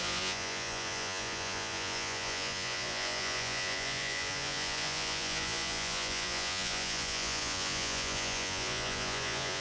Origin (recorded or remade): remade